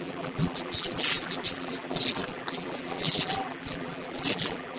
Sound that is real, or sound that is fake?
fake